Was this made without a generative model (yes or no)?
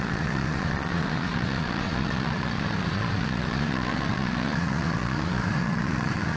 no